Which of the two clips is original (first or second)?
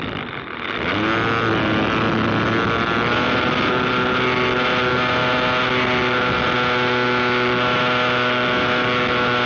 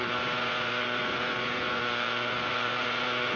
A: first